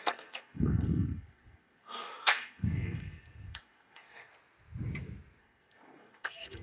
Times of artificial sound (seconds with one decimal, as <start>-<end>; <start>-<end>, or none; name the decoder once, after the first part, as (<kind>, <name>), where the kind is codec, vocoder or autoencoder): 0.0-4.3 (codec, SNAC); 5.4-6.6